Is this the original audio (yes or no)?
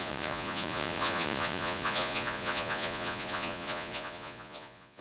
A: no